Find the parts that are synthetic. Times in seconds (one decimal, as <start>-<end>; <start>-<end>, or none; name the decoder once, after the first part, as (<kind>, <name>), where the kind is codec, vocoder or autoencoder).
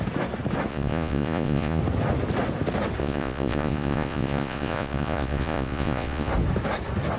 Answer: 0.7-1.8 (vocoder, Vocos); 3.0-6.3